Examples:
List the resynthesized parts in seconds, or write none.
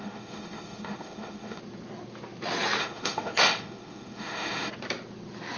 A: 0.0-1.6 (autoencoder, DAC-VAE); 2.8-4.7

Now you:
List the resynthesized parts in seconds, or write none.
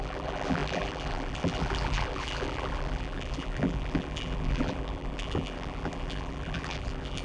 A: 0.0-7.2 (vocoder, BigVGAN v2)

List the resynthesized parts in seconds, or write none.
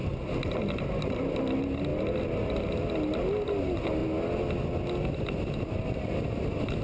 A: none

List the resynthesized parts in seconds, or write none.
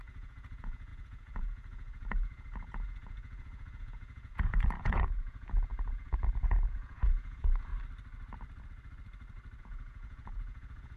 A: 0.0-7.7 (vocoder, Vocos); 9.6-11.0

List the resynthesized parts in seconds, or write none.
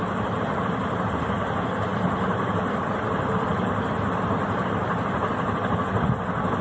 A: none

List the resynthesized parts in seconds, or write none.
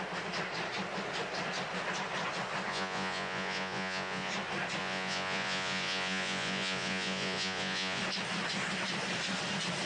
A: 2.7-4.3 (vocoder, Vocos); 4.8-8.0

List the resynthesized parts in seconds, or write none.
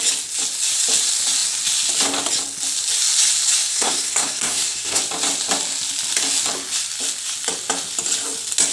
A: 3.7-5.0 (codec, SNAC)